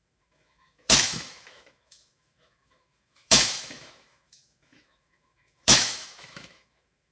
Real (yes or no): no